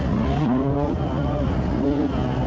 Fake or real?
fake